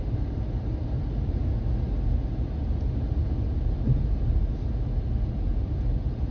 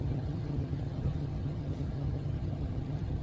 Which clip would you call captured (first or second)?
first